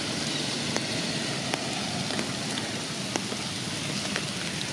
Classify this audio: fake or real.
real